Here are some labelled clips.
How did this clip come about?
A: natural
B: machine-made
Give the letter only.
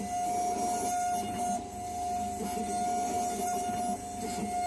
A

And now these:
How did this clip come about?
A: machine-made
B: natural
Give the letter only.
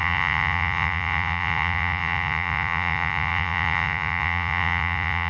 A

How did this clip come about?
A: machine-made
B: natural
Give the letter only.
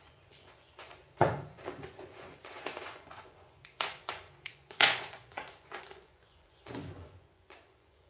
A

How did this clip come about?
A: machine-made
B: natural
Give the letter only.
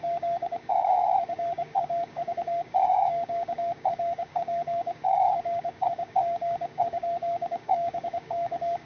A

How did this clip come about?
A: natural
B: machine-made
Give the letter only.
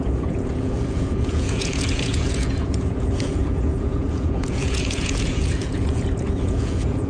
B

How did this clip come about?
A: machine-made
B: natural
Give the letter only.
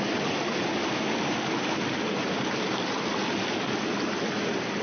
B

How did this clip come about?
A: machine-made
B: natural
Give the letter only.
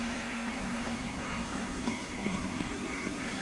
A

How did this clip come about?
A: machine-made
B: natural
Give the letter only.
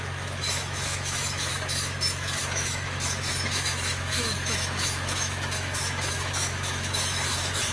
A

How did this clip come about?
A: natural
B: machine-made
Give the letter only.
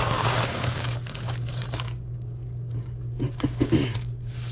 B